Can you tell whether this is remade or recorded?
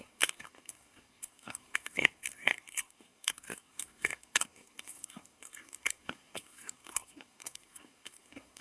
remade